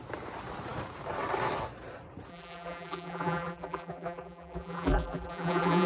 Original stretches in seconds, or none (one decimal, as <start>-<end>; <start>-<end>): 0.0-2.3